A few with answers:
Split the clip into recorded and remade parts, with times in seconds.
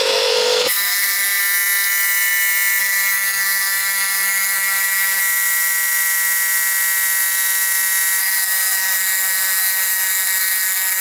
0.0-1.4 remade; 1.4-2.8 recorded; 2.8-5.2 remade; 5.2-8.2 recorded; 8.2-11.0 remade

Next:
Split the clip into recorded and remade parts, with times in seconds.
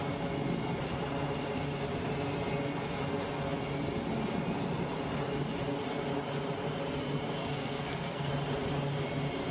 0.0-7.4 recorded; 7.4-8.3 remade; 8.3-9.5 recorded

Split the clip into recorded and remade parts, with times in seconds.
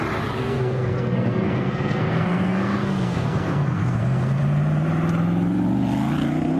0.0-0.4 recorded; 0.4-4.4 remade; 4.4-6.6 recorded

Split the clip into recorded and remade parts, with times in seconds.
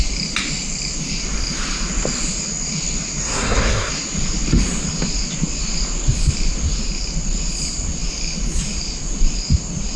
0.0-3.2 recorded; 3.2-3.9 remade; 3.9-10.0 recorded